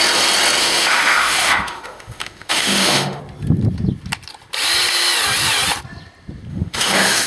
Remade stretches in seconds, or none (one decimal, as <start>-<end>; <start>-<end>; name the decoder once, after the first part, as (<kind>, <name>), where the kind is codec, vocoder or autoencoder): 0.6-3.2 (autoencoder, DAC-VAE); 6.5-7.3